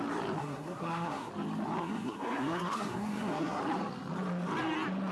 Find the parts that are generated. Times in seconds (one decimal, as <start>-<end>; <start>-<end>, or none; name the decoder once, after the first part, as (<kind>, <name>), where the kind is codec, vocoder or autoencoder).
0.4-1.3 (codec, SNAC); 1.8-3.6